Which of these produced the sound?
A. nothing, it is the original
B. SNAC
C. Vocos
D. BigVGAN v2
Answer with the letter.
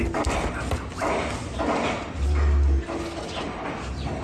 A